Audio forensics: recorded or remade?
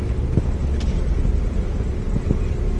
recorded